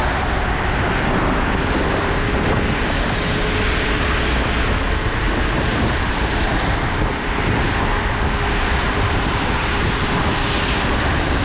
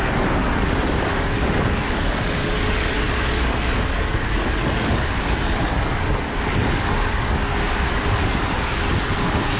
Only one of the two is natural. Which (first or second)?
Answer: first